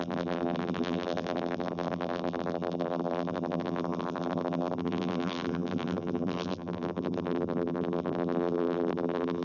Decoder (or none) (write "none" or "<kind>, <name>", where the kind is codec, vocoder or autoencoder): vocoder, BigVGAN v2